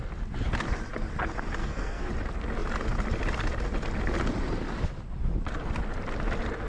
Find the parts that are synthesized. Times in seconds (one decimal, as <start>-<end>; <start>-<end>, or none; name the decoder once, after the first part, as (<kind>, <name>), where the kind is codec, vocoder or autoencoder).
1.6-2.1 (codec, SNAC)